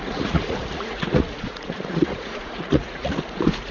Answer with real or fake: fake